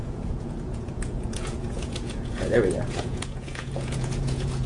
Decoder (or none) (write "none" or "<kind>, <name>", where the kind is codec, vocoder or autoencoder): vocoder, Vocos